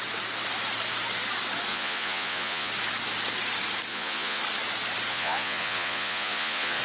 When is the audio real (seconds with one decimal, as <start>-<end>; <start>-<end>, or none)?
0.0-1.7; 2.7-3.9; 4.4-5.1